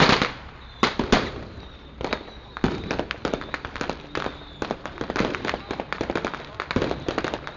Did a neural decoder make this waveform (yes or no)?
no